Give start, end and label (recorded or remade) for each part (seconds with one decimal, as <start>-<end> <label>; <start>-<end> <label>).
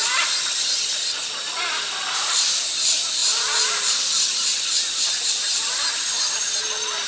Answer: 0.0-7.1 recorded